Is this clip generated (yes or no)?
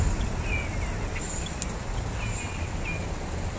no